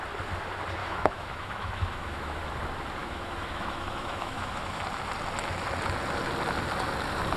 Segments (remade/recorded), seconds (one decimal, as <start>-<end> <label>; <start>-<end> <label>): 0.0-0.8 recorded; 0.8-2.4 remade; 2.4-3.0 recorded; 3.0-4.8 remade; 4.8-7.4 recorded

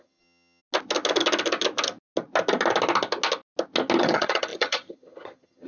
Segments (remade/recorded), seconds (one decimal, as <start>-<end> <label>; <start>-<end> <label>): 0.0-0.6 remade; 0.6-4.0 recorded; 4.0-5.7 remade

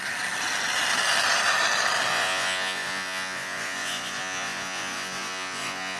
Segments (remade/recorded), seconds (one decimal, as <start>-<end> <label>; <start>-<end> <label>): 0.0-2.1 recorded; 2.1-6.0 remade

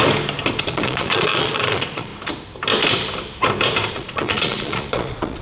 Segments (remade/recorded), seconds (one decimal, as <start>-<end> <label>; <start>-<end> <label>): 0.0-0.6 recorded; 0.6-2.1 remade; 2.1-3.9 recorded; 3.9-5.4 remade

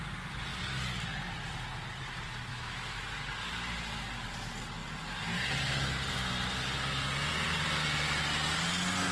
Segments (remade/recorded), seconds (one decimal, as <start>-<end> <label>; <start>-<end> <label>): 0.0-2.5 recorded; 2.5-3.0 remade; 3.0-9.1 recorded